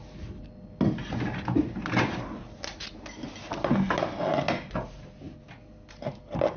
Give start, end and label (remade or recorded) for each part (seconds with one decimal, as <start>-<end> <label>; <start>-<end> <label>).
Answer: 0.0-6.6 recorded